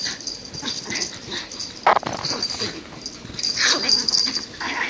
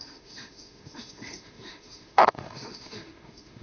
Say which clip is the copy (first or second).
second